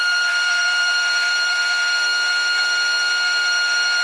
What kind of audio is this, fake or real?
fake